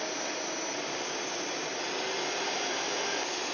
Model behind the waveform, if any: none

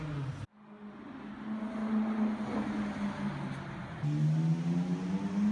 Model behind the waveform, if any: none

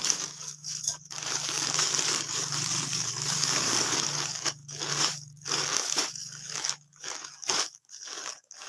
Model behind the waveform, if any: codec, DAC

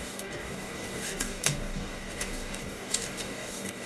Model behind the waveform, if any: codec, DAC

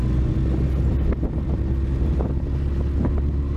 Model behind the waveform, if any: none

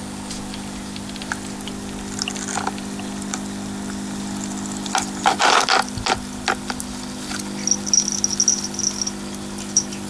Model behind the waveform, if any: none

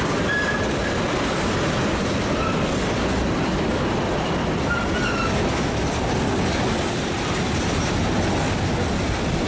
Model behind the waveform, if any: none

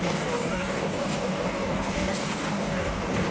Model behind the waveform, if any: codec, DAC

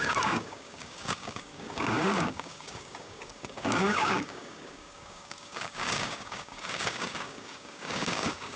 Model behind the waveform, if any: codec, DAC